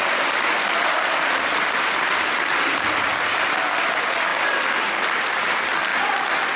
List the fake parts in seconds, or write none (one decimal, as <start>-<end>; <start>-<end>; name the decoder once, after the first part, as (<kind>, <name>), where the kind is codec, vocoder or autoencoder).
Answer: none